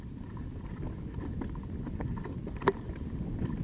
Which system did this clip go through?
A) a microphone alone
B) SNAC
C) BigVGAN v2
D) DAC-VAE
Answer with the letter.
C